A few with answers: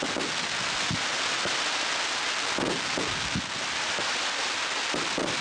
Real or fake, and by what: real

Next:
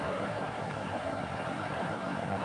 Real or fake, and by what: fake, codec, SNAC